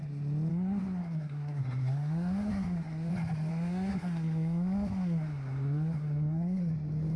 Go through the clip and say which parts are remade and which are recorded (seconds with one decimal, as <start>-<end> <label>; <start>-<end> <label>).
0.0-0.5 recorded; 0.5-3.1 remade; 3.1-3.5 recorded; 3.5-6.7 remade; 6.7-7.2 recorded